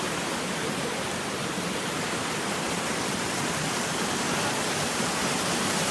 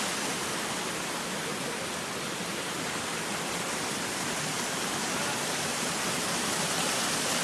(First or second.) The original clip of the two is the second